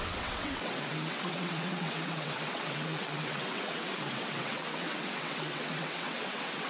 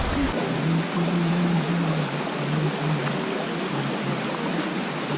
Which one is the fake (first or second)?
first